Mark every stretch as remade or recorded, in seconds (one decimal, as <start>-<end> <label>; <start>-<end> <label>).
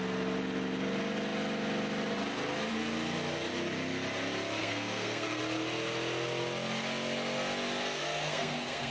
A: 0.0-4.6 recorded; 4.6-5.4 remade; 5.4-7.8 recorded; 7.8-8.9 remade